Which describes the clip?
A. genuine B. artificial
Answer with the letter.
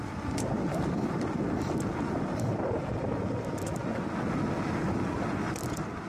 A